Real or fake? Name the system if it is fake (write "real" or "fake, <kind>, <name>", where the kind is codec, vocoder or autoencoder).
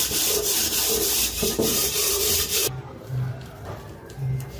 fake, vocoder, BigVGAN v2